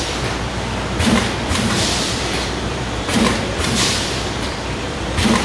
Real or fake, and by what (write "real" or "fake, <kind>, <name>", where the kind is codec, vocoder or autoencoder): fake, vocoder, BigVGAN v2